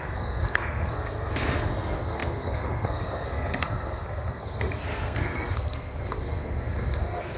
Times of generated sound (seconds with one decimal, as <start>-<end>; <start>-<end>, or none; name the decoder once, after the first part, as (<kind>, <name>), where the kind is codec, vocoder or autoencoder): 0.0-7.4 (codec, SNAC)